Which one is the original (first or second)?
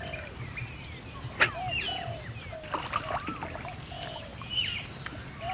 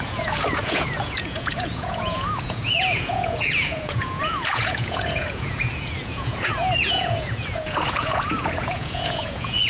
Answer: first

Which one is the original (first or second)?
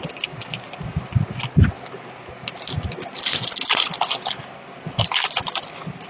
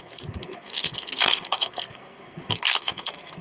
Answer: first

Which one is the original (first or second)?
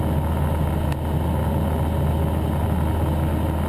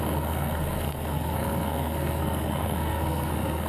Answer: first